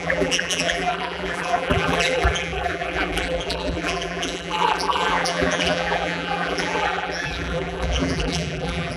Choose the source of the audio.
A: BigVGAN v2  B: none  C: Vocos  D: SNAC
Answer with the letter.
A